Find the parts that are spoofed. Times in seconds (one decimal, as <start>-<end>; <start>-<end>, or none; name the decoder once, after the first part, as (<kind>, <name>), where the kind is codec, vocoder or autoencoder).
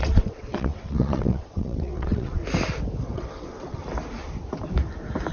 0.0-2.4 (vocoder, WaveNeXt); 3.1-3.8